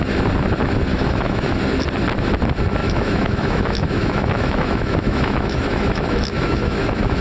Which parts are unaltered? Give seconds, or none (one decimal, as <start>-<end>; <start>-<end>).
0.0-0.9; 1.6-2.8